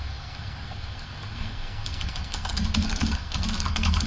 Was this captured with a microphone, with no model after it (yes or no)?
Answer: no